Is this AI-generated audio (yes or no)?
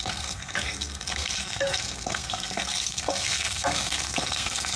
yes